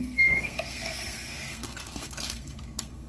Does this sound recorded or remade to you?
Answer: remade